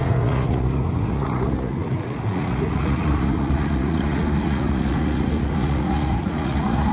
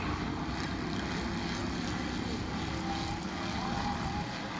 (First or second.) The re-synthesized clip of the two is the first